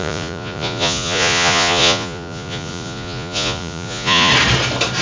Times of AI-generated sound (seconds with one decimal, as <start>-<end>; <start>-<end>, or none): 0.0-4.3